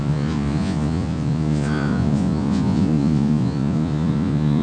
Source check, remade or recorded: remade